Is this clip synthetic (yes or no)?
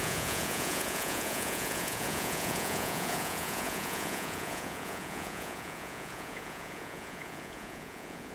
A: yes